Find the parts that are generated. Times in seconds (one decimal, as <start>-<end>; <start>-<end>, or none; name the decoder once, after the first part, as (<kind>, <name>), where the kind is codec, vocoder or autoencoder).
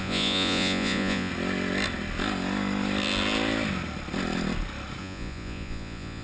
0.0-1.3 (vocoder, Vocos); 5.0-6.2